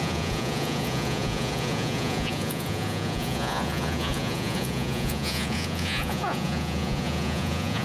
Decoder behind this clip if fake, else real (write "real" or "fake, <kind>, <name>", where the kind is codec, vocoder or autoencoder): fake, vocoder, Vocos